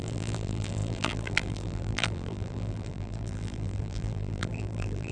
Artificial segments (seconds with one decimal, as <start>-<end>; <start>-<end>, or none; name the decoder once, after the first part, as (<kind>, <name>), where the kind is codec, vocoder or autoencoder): 0.0-5.1 (vocoder, BigVGAN v2)